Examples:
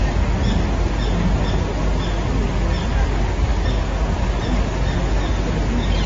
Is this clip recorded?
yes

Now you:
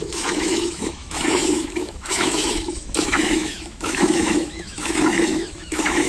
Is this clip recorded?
no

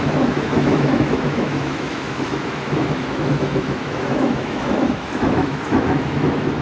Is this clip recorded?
no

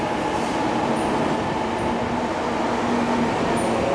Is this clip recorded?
yes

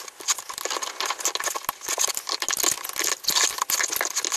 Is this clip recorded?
yes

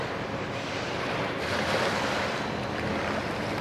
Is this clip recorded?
yes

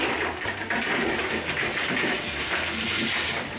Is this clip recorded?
yes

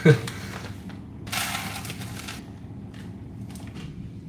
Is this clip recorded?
yes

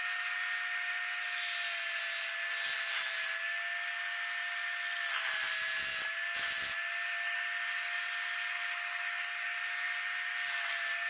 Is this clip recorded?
yes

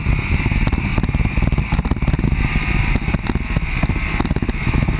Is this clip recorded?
yes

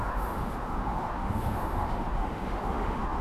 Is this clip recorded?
no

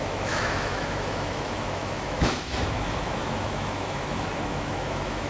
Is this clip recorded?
no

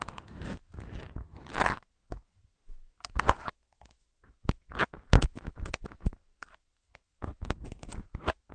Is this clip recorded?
no